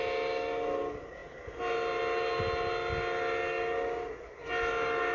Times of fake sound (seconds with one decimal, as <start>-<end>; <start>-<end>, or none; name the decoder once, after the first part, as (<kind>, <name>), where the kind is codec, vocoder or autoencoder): none